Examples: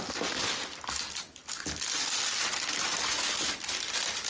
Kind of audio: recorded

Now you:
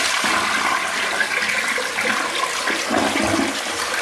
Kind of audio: recorded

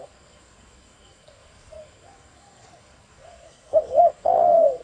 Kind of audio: remade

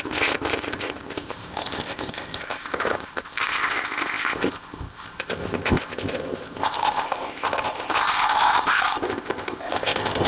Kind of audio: remade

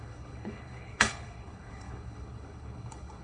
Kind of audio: remade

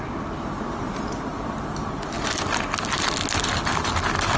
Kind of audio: recorded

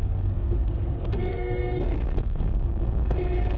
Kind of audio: remade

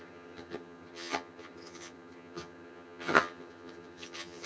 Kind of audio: remade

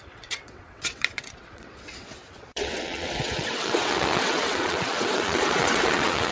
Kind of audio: remade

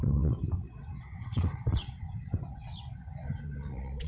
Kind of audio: remade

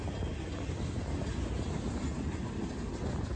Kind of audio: recorded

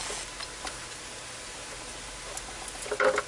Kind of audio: recorded